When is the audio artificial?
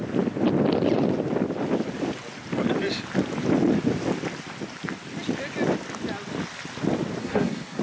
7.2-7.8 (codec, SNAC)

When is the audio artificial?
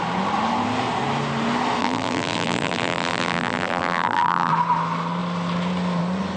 1.8-4.5 (vocoder, BigVGAN v2)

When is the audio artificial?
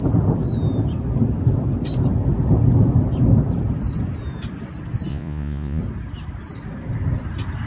5.1-5.8 (vocoder, Vocos)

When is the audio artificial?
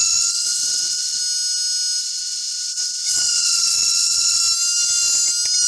0.0-1.2 (vocoder, WaveNeXt); 2.0-4.4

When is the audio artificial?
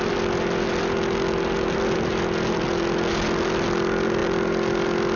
none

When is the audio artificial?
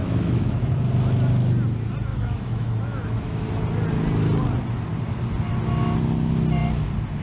0.0-0.8 (autoencoder, DAC-VAE); 2.1-3.5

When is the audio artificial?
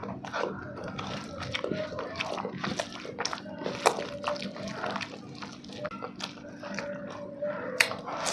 0.6-2.7 (vocoder, BigVGAN v2); 7.5-8.3